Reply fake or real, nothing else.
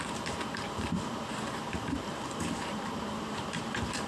fake